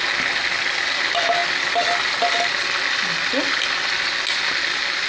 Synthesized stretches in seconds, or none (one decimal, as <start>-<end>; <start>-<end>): none